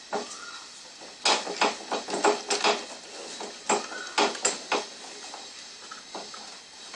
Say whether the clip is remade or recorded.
recorded